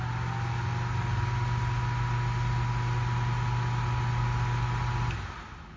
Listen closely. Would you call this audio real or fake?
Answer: real